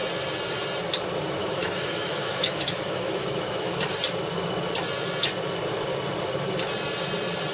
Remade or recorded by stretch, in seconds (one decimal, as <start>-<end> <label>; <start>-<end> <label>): 0.0-1.4 recorded; 1.4-3.8 remade; 3.8-7.5 recorded